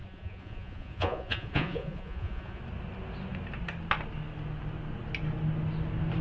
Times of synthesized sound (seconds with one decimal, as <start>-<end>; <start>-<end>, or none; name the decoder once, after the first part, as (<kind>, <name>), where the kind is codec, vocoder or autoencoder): 0.0-2.6 (vocoder, Vocos)